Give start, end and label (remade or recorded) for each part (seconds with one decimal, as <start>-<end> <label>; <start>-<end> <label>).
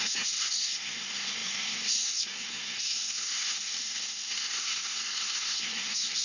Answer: 0.0-6.2 remade